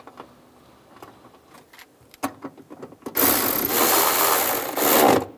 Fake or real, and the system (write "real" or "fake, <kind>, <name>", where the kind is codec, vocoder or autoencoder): real